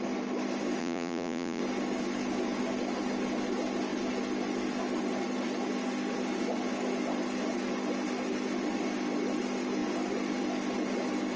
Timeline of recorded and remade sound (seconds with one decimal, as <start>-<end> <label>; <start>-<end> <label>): 0.0-0.8 recorded; 0.8-1.6 remade; 1.6-11.4 recorded